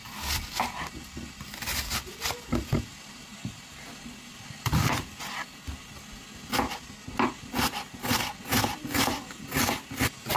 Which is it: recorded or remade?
recorded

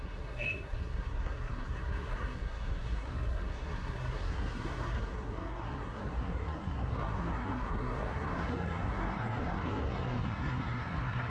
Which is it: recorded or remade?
remade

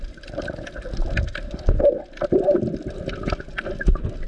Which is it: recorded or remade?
recorded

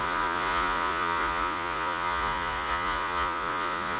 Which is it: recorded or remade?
remade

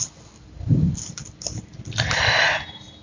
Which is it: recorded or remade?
recorded